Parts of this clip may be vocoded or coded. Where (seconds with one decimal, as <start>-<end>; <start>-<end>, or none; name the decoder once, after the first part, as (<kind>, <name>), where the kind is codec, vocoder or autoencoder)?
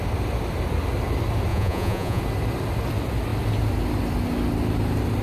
1.5-2.2 (vocoder, Vocos)